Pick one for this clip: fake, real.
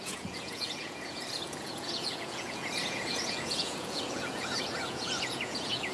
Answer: fake